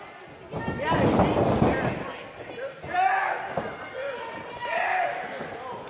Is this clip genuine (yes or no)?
yes